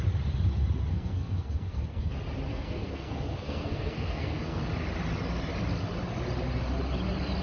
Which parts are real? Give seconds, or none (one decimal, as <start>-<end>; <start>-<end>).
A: 0.0-0.9; 2.1-2.5; 4.6-7.4